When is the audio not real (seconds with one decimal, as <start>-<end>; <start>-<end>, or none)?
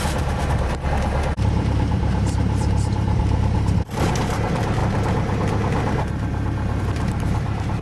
0.0-4.8; 6.8-7.8